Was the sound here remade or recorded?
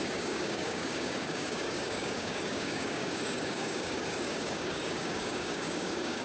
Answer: remade